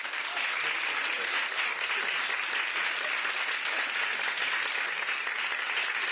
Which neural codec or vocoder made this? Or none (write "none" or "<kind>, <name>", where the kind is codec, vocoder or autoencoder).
none